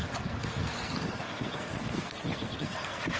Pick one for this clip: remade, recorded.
remade